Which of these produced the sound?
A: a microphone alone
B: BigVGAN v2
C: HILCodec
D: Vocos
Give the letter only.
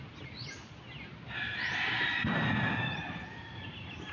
A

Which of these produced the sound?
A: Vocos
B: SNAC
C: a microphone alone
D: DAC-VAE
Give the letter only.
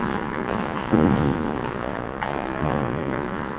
A